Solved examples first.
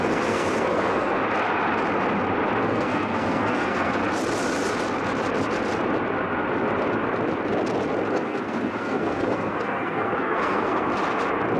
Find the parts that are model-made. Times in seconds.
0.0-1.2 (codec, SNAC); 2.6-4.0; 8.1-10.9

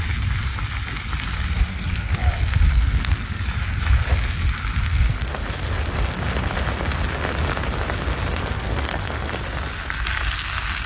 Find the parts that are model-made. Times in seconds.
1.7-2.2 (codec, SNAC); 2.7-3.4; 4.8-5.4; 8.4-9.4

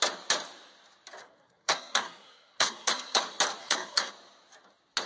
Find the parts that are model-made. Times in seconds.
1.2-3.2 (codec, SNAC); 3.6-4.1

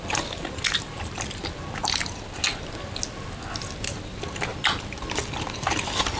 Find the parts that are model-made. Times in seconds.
none